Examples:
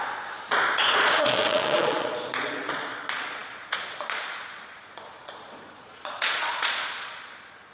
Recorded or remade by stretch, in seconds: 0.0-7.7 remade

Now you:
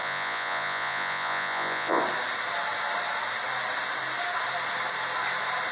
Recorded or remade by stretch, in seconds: 0.0-2.0 remade; 2.0-5.7 recorded

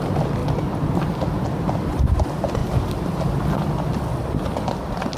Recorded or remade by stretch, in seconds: 0.0-5.2 recorded